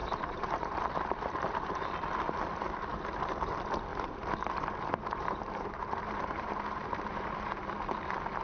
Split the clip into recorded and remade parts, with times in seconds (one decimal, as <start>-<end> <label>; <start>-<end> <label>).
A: 0.0-0.8 remade; 0.8-2.9 recorded; 2.9-3.5 remade; 3.5-3.9 recorded; 3.9-7.5 remade; 7.5-8.4 recorded